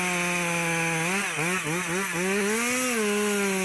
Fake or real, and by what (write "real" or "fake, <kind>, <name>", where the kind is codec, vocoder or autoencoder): real